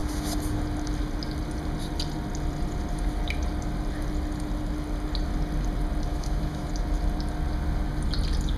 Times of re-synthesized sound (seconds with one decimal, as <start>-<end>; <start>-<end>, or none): 6.1-6.7